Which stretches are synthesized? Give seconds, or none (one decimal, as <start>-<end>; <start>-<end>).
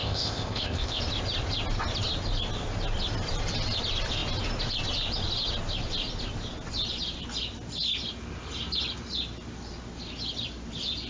0.0-1.0